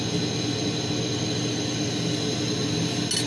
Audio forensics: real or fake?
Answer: real